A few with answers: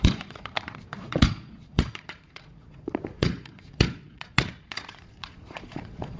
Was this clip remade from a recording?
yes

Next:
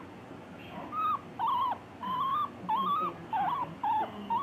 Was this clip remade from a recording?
no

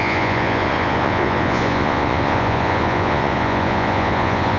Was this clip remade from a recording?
yes